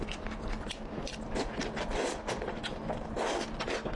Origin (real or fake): real